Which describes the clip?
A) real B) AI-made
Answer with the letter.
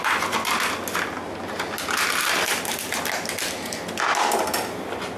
A